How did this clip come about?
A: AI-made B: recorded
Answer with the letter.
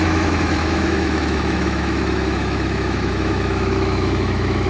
A